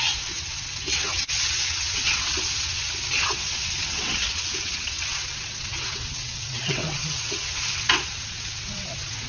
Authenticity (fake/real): fake